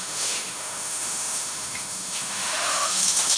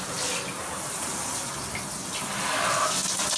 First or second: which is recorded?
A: second